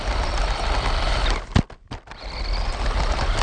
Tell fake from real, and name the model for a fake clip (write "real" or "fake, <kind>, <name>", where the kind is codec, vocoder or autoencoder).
real